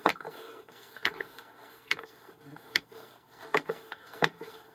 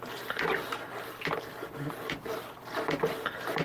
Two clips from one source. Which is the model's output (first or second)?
first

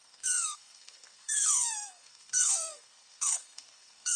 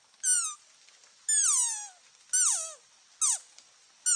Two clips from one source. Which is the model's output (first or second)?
first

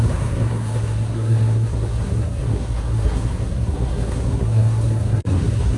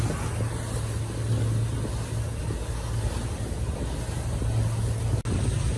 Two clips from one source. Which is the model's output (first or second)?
first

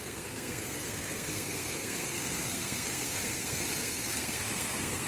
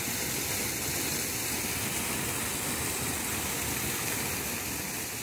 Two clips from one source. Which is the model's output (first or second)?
first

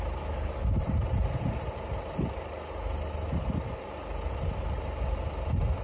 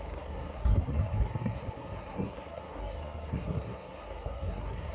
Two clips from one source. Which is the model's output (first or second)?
second